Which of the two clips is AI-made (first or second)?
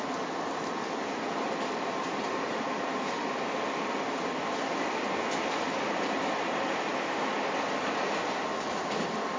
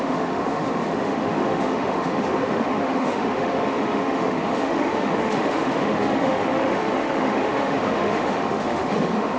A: second